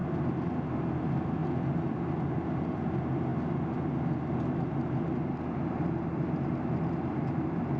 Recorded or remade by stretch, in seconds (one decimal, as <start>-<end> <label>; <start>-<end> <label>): 0.0-7.8 recorded